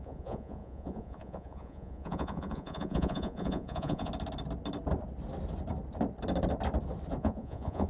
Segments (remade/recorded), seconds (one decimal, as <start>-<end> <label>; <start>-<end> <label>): 0.0-4.1 remade; 4.1-7.2 recorded; 7.2-7.9 remade